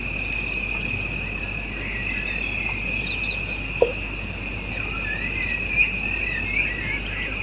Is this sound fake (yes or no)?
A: no